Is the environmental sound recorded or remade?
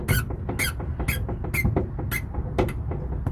recorded